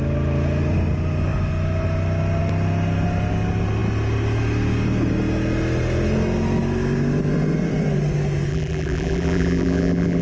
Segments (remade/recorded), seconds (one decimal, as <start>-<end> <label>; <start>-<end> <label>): 0.0-8.5 recorded; 8.5-10.2 remade